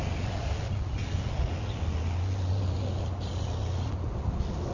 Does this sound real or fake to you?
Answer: real